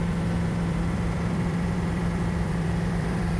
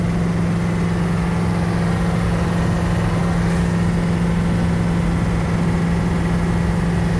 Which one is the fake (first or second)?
first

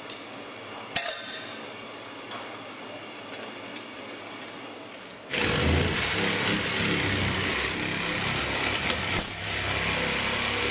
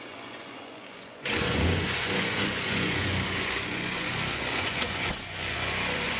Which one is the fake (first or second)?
second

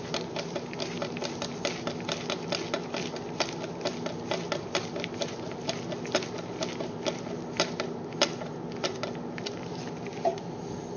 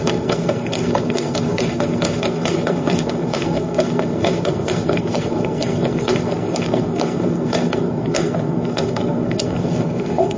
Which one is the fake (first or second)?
second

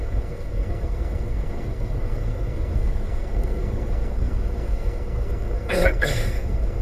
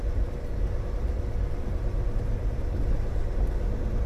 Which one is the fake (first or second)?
first